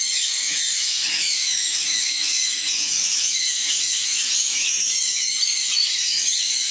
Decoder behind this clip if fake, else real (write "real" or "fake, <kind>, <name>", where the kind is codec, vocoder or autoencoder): fake, autoencoder, DAC-VAE